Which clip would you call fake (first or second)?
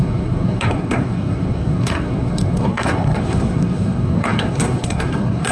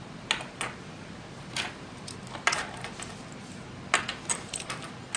first